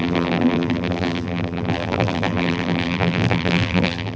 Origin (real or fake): fake